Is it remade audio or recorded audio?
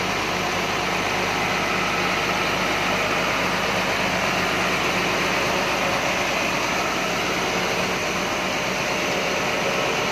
recorded